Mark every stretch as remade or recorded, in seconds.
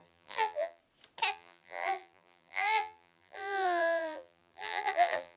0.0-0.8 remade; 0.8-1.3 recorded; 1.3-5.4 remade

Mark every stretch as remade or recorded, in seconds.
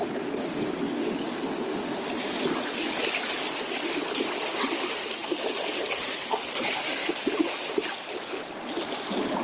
0.0-9.4 recorded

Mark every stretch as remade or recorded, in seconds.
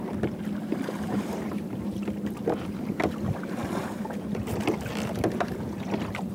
0.0-0.7 recorded; 0.7-3.0 remade; 3.0-3.6 recorded; 3.6-4.5 remade; 4.5-6.3 recorded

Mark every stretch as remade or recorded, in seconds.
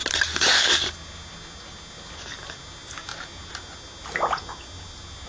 0.0-5.3 recorded